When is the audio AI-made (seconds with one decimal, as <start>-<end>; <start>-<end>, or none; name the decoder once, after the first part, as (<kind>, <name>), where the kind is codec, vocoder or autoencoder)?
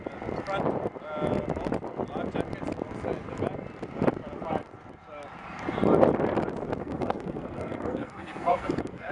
6.8-9.1 (codec, SNAC)